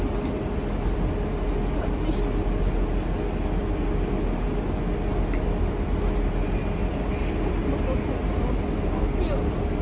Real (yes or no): yes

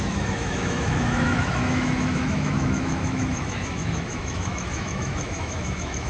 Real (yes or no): no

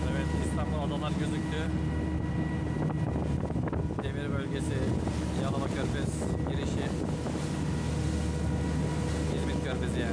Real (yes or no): yes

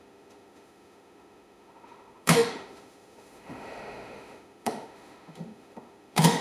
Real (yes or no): no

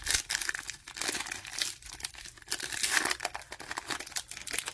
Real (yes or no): yes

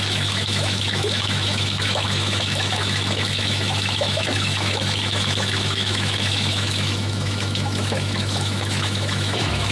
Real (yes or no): no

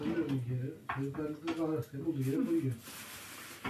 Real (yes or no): yes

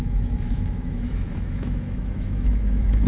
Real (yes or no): no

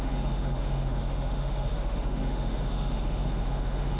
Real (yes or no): no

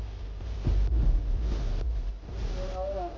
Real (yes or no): yes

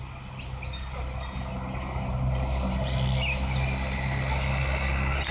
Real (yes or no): yes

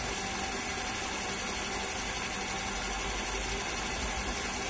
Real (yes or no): yes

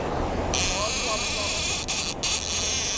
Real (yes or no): yes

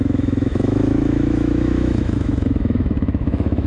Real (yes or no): no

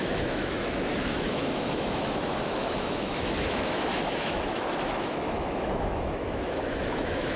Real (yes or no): no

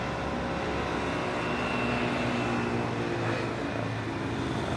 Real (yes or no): yes